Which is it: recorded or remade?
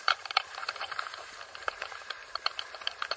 remade